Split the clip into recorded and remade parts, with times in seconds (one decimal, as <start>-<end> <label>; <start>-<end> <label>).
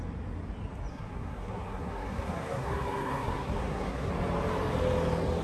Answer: 0.0-0.9 recorded; 0.9-4.1 remade; 4.1-5.4 recorded